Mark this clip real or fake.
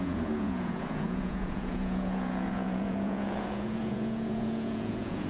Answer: fake